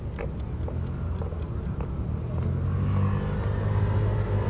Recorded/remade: recorded